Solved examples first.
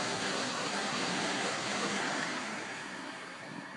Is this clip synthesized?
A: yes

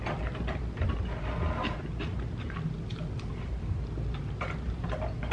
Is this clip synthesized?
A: yes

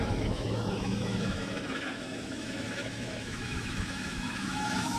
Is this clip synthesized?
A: yes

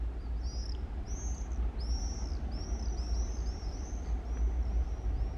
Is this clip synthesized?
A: no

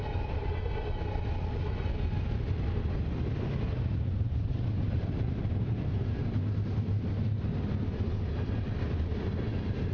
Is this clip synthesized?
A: no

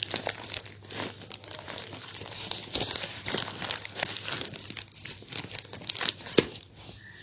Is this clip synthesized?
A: no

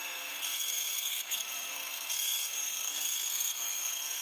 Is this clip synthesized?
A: yes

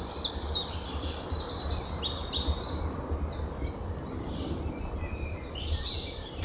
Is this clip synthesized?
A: no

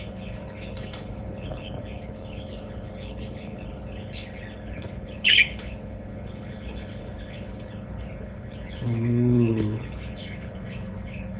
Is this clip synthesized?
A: yes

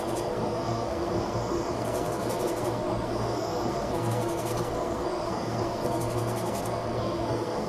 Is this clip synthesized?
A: yes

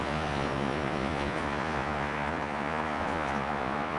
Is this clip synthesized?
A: yes